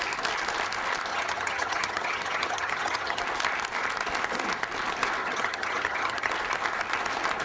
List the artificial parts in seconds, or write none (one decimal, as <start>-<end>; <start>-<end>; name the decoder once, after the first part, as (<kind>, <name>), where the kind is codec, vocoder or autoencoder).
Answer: 1.1-3.2 (vocoder, HiFi-GAN); 5.2-6.3